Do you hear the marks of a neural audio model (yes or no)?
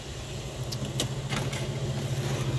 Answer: no